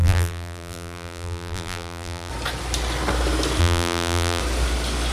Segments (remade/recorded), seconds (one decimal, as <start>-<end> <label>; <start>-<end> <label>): 0.0-2.3 remade; 2.3-3.6 recorded; 3.6-4.4 remade; 4.4-5.1 recorded